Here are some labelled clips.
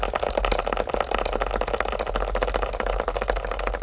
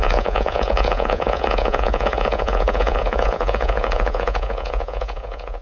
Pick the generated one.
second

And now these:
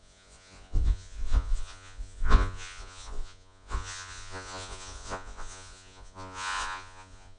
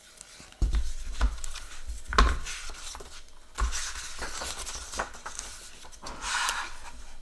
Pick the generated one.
first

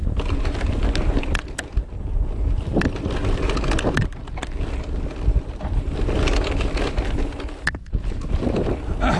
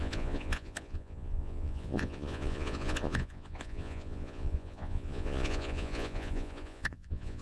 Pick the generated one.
second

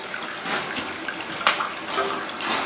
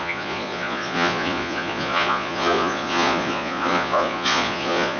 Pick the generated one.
second